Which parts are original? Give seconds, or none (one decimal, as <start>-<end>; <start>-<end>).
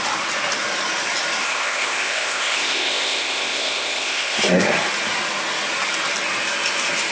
0.0-1.4; 4.6-7.1